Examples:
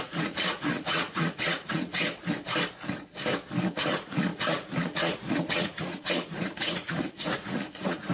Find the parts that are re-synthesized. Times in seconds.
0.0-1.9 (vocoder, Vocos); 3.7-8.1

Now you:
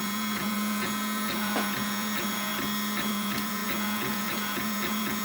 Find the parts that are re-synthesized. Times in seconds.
0.0-2.5 (vocoder, Vocos); 3.1-5.2

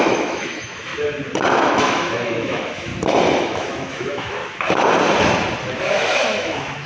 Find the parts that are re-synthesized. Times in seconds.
0.0-0.9 (autoencoder, DAC-VAE); 1.5-2.9; 3.4-4.4; 5.8-6.9

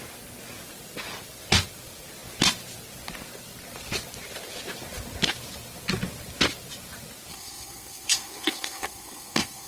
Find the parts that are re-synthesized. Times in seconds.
7.3-9.7 (codec, SNAC)